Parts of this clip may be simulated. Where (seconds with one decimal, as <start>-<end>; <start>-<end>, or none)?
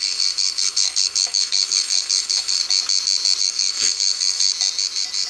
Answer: 0.0-2.6; 3.4-4.5